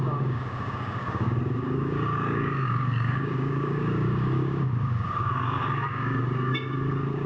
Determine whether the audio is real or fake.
fake